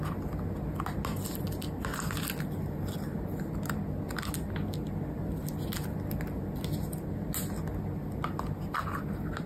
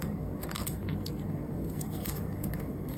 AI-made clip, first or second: second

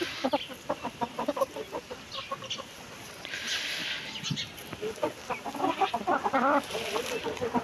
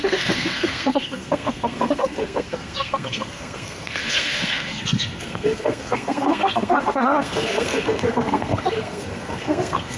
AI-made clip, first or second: second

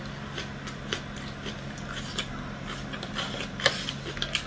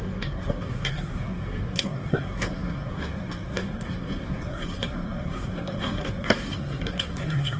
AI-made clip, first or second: second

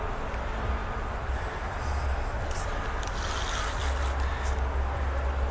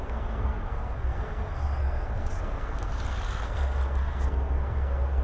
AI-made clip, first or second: second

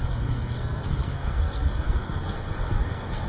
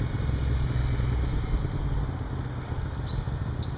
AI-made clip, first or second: first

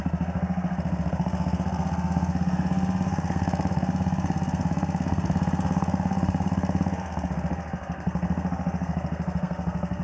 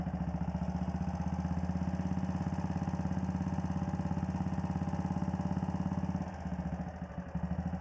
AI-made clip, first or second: first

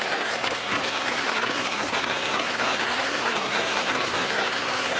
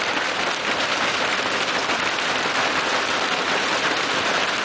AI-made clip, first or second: first